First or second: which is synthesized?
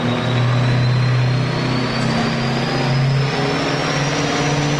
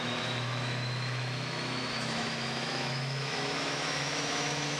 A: second